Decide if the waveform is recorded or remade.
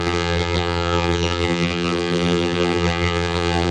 remade